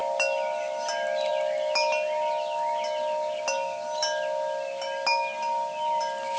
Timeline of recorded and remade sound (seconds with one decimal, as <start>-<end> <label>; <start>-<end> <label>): 0.0-6.4 recorded